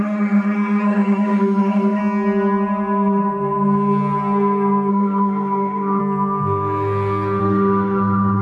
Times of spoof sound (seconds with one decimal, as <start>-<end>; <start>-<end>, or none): 0.0-2.0; 4.9-6.0; 7.4-8.4